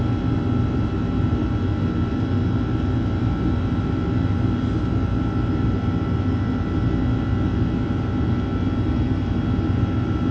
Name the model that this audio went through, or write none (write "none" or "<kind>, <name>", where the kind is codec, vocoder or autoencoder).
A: none